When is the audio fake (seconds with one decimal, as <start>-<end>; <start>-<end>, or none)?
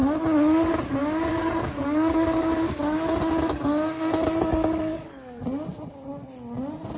1.3-2.8; 4.9-5.4